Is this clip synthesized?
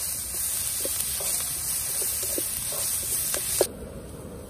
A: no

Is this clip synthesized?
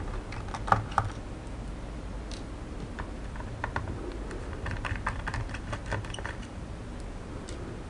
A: yes